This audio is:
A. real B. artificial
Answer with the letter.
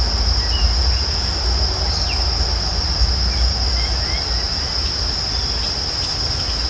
A